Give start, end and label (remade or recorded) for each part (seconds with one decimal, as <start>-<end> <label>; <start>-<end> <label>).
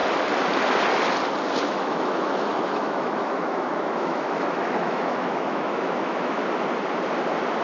0.0-1.6 recorded; 1.6-6.4 remade; 6.4-7.6 recorded